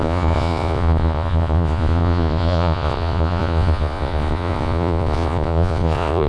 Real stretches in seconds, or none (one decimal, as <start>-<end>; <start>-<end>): none